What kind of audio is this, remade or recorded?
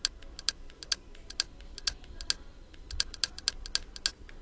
recorded